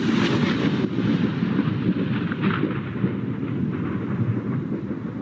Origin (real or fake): real